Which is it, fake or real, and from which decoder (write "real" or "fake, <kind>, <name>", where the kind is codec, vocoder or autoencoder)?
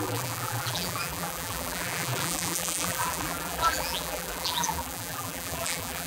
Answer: fake, vocoder, BigVGAN v2